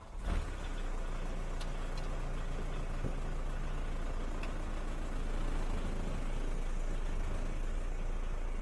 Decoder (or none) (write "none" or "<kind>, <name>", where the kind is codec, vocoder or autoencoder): none